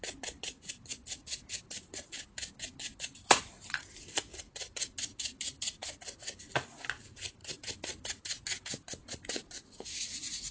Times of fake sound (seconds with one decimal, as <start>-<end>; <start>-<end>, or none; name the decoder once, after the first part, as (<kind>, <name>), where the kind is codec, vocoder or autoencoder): none